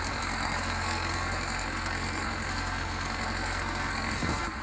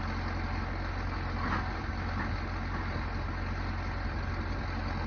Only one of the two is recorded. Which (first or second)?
second